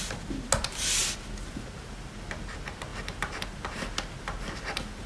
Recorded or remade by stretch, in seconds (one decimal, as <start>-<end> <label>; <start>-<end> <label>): 0.0-5.1 recorded